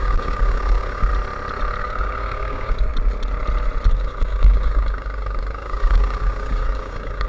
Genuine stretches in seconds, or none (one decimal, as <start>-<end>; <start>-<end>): 1.1-1.8; 2.9-3.9